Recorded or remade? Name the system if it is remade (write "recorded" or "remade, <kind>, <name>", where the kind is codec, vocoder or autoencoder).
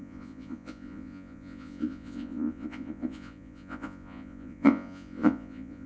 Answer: remade, vocoder, Vocos